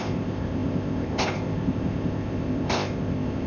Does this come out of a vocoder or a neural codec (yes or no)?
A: yes